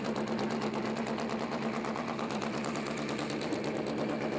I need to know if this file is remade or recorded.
remade